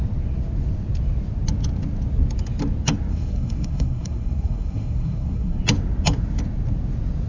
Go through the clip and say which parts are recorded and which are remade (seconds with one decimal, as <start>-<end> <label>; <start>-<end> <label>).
0.0-3.1 recorded; 3.1-5.6 remade; 5.6-7.3 recorded